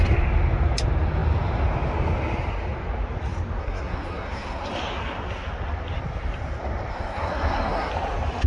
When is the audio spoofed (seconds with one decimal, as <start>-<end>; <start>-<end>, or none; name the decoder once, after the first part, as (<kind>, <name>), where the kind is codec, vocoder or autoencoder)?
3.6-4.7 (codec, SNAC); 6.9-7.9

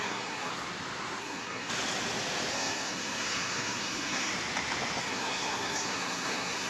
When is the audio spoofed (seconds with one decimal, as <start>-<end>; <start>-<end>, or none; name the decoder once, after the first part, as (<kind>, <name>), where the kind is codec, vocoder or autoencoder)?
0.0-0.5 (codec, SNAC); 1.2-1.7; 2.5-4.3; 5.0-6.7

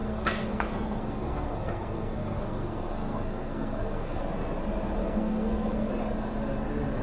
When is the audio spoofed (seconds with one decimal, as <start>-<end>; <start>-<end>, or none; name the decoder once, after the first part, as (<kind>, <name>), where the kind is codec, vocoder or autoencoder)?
0.0-4.2 (codec, SNAC); 5.0-5.9

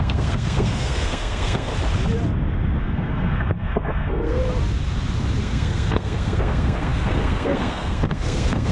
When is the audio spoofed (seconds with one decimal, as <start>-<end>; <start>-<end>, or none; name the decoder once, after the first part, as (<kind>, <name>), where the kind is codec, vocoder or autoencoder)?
0.0-1.7 (codec, SNAC); 2.8-4.4; 5.4-8.7

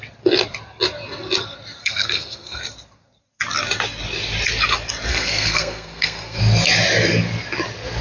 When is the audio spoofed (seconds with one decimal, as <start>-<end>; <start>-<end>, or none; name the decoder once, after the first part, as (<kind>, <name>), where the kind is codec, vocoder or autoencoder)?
1.8-2.6 (codec, SNAC); 5.1-6.4

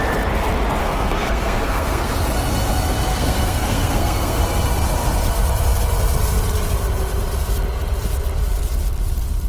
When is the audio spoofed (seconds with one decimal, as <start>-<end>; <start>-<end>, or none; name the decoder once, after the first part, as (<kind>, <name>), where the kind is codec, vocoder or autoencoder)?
0.8-2.1 (codec, SNAC); 3.1-4.4

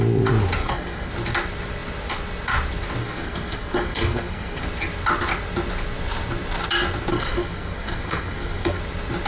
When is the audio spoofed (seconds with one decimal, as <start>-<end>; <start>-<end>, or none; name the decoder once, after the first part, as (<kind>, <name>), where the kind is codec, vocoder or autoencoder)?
0.6-1.1 (codec, SNAC); 3.0-4.6; 7.1-8.8

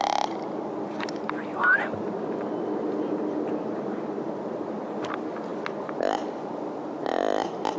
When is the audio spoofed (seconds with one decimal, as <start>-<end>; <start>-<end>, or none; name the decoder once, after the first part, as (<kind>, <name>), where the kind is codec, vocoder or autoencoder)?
none